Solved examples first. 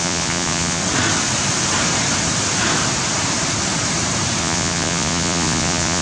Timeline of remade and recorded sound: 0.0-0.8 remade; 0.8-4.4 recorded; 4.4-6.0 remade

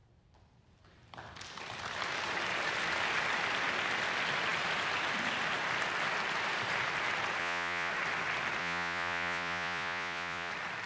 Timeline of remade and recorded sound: 0.0-7.4 recorded; 7.4-7.9 remade; 7.9-8.6 recorded; 8.6-10.5 remade; 10.5-10.9 recorded

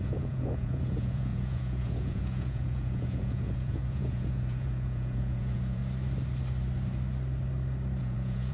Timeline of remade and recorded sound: 0.0-5.8 remade; 5.8-8.0 recorded; 8.0-8.5 remade

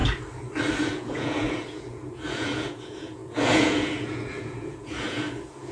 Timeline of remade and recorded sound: 0.0-0.8 recorded; 0.8-5.7 remade

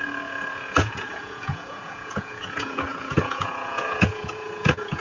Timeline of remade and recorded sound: 0.0-5.0 remade

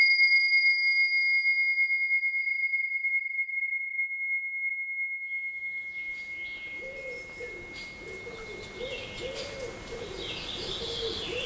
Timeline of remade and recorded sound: 0.0-2.4 recorded; 2.4-4.0 remade; 4.0-11.5 recorded

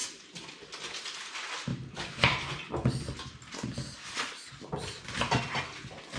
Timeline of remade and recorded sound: 0.0-6.2 recorded

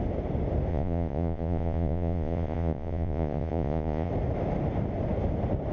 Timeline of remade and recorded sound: 0.0-0.7 recorded; 0.7-4.1 remade; 4.1-5.7 recorded